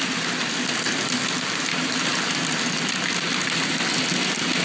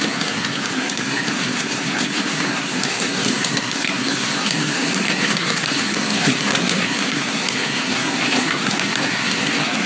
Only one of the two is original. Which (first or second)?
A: first